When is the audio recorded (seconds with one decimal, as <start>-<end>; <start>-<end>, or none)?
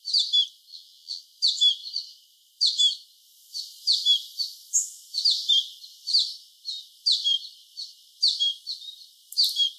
0.0-0.7; 1.2-9.8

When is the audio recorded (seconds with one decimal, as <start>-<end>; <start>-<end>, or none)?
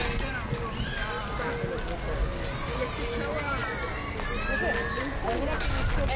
0.0-6.2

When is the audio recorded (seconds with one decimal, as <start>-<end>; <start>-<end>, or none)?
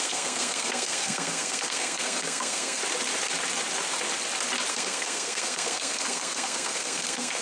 2.8-4.7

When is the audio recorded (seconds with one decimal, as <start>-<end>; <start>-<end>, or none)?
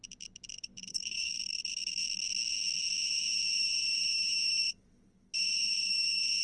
0.0-0.7; 1.3-6.4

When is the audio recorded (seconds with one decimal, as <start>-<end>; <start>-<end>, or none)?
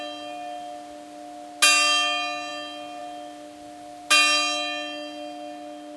0.0-6.0